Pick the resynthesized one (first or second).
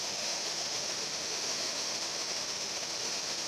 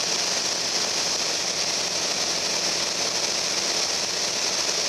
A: first